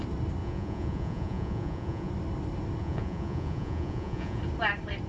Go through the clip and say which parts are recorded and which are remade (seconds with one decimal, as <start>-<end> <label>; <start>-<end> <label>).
0.0-0.4 recorded; 0.4-2.1 remade; 2.1-2.8 recorded; 2.8-4.4 remade; 4.4-5.1 recorded